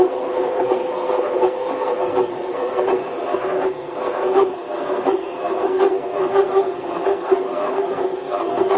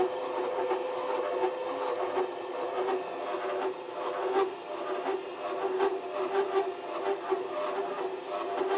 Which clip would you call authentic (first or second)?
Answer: second